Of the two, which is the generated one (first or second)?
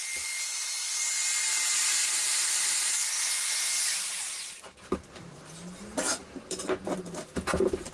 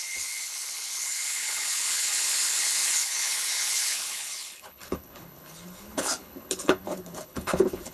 second